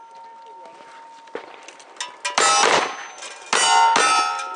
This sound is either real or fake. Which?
real